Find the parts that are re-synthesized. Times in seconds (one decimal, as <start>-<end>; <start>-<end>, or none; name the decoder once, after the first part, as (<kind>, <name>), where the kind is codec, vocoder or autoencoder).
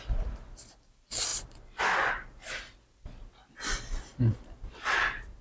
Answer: none